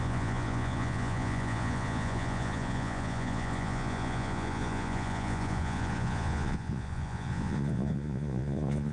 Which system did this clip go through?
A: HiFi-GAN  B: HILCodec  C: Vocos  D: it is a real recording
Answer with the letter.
C